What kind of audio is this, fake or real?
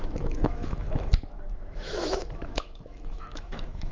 fake